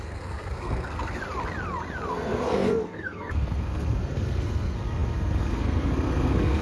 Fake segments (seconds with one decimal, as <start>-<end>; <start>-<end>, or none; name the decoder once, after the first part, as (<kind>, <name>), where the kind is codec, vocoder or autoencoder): 0.0-1.2 (codec, SNAC); 2.1-6.6